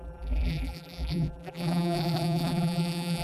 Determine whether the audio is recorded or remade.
remade